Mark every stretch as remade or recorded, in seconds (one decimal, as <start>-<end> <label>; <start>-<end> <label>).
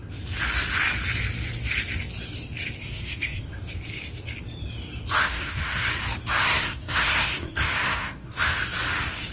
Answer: 0.0-2.8 recorded; 2.8-3.4 remade; 3.4-5.2 recorded; 5.2-5.9 remade; 5.9-6.4 recorded; 6.4-8.6 remade; 8.6-9.3 recorded